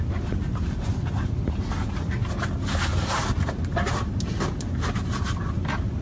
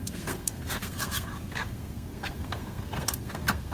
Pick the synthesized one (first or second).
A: second